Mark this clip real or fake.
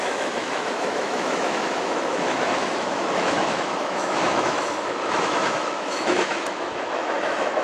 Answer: fake